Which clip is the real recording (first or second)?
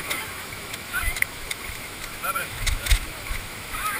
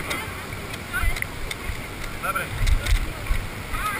second